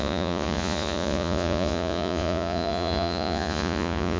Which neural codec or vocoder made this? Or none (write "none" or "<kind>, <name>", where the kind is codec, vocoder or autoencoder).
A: vocoder, Vocos